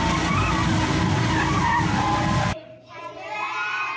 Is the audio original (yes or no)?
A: yes